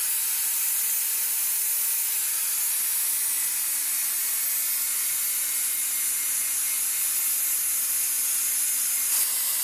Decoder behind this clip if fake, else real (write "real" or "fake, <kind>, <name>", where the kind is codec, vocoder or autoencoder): real